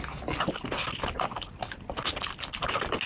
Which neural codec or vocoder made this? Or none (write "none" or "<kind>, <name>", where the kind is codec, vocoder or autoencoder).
none